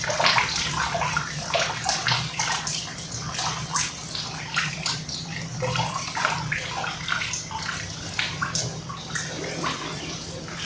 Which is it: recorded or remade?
recorded